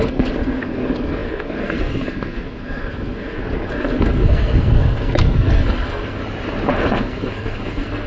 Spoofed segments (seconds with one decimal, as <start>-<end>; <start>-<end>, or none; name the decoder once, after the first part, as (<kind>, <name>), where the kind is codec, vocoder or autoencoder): 0.0-6.2 (codec, SNAC); 6.7-8.1